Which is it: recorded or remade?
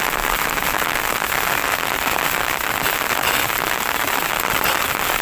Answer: recorded